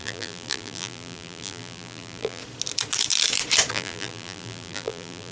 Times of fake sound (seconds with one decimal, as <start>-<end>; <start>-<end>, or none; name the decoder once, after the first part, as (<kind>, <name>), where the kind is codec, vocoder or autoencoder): 0.0-2.4 (vocoder, BigVGAN v2); 3.7-5.3